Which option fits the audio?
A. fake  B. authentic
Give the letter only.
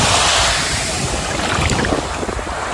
B